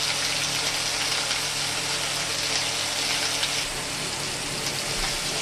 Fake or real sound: real